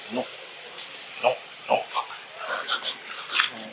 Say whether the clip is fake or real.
real